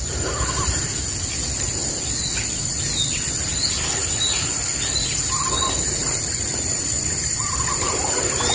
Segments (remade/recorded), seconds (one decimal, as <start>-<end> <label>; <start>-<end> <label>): 0.0-8.5 recorded